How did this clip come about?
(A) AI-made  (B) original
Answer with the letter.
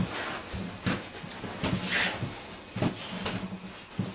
B